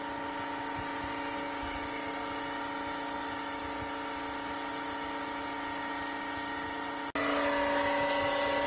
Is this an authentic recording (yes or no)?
yes